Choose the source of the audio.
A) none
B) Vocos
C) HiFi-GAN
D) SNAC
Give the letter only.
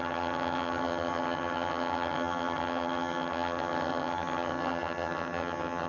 C